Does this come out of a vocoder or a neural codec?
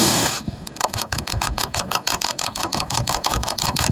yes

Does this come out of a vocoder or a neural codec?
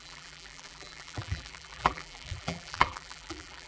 yes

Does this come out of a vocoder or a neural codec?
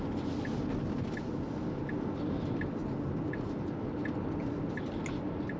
no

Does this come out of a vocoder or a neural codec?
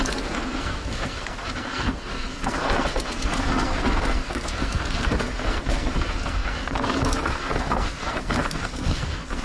yes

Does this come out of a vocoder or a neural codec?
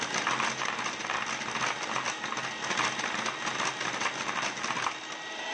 no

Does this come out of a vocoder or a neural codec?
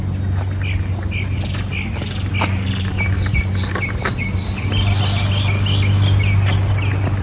no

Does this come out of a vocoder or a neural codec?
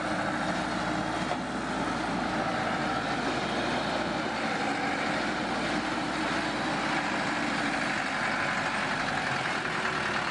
no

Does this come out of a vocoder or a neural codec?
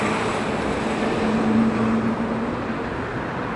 no